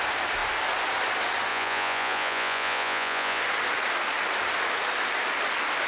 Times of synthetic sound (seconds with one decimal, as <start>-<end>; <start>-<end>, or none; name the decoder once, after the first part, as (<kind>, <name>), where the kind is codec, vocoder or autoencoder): 1.5-3.4 (vocoder, Vocos)

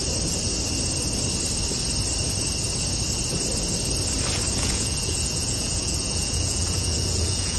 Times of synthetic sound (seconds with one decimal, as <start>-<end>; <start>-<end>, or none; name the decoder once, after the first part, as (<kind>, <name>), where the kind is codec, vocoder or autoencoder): 4.6-7.6 (vocoder, Vocos)

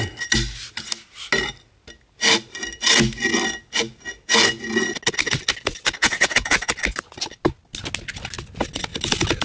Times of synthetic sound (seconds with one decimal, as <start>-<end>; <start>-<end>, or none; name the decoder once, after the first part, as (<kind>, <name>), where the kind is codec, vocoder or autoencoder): 6.0-6.7 (vocoder, Vocos)

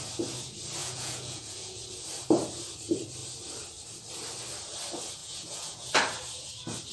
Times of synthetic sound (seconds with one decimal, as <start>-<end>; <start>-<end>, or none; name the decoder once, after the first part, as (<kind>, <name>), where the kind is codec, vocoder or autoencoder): 0.8-1.8 (vocoder, Vocos); 5.2-5.9

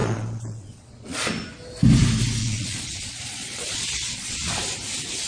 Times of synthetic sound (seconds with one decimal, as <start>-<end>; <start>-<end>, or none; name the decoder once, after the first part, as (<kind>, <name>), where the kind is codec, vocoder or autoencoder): 0.0-1.3 (vocoder, Vocos); 2.4-4.5